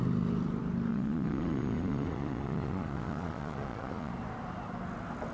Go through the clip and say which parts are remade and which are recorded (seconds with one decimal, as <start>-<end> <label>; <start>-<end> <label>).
0.0-0.9 recorded; 0.9-4.1 remade; 4.1-5.3 recorded